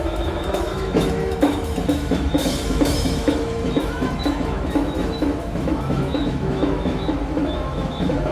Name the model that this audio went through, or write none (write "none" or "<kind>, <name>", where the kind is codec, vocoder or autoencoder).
autoencoder, DAC-VAE